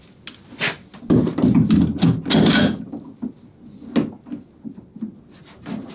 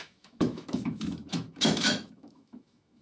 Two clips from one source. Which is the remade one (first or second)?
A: second